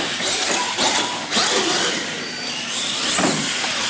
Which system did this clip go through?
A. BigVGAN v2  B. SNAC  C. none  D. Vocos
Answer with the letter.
A